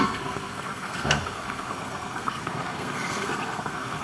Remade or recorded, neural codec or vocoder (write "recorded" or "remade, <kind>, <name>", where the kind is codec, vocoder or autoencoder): remade, codec, SNAC